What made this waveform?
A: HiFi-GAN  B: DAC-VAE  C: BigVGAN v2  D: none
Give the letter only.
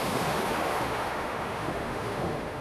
B